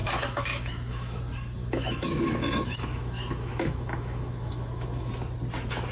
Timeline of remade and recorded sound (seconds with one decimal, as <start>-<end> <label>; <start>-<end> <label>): 0.0-1.2 remade; 1.2-1.6 recorded; 1.6-5.1 remade; 5.1-5.9 recorded